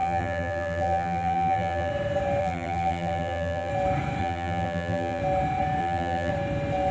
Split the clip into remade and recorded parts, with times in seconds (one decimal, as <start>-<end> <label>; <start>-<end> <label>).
0.0-1.9 remade; 1.9-2.4 recorded; 2.4-3.7 remade; 3.7-4.2 recorded; 4.2-5.2 remade; 5.2-5.8 recorded; 5.8-6.3 remade; 6.3-6.9 recorded